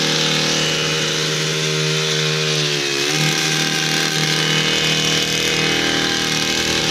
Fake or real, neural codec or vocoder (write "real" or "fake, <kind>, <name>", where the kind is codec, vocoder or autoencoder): real